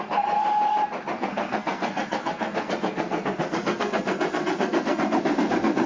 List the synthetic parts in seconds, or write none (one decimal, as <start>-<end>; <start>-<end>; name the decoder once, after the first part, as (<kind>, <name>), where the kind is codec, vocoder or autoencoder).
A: 0.0-0.4 (codec, SNAC); 1.2-5.9